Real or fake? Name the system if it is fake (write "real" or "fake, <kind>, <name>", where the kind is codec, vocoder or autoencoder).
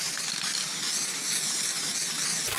real